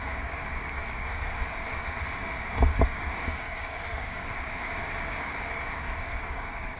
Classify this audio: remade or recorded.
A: remade